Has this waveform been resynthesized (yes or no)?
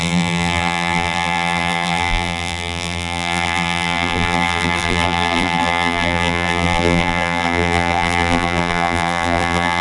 yes